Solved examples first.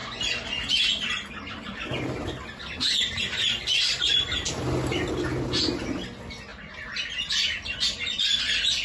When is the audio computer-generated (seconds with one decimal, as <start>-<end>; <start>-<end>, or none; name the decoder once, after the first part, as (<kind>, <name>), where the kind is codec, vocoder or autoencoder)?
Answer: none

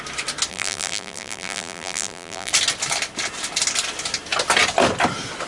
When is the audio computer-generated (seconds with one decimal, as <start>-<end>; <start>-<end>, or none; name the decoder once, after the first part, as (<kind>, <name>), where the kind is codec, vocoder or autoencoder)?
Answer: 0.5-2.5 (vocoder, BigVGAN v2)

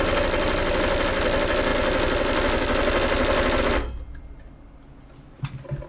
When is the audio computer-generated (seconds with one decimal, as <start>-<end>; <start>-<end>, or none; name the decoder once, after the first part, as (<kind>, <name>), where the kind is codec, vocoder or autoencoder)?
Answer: none

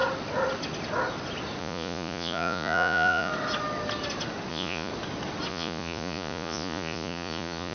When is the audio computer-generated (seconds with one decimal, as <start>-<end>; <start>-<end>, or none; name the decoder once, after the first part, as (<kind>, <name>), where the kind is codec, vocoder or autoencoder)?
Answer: 1.6-3.3 (vocoder, Vocos); 4.5-4.9; 5.5-7.7

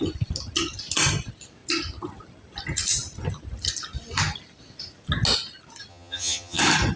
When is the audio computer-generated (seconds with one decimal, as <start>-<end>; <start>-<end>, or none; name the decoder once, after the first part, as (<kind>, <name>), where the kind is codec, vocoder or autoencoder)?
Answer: 5.9-6.6 (vocoder, HiFi-GAN)

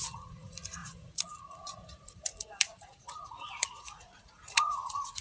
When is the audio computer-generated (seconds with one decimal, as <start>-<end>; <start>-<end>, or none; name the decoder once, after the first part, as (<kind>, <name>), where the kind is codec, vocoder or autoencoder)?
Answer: 0.0-5.2 (vocoder, Vocos)

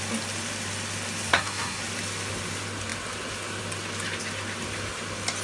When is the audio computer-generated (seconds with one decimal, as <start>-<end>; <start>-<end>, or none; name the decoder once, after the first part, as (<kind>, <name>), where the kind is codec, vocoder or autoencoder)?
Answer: 1.3-1.8 (codec, SNAC)